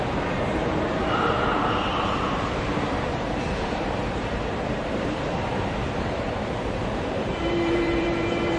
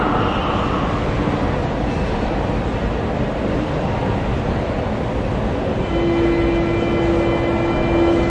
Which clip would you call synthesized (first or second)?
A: first